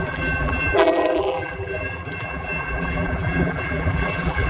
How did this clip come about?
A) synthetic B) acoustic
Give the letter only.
A